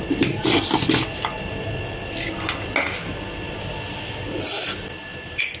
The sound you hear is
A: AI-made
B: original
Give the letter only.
B